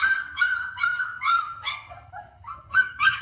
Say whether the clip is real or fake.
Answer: fake